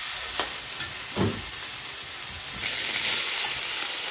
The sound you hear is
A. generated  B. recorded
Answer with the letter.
B